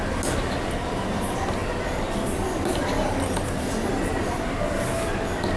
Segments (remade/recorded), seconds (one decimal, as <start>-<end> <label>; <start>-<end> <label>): 0.0-5.6 recorded